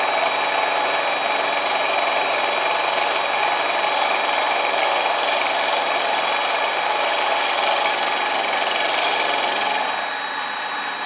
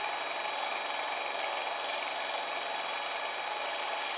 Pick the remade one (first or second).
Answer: first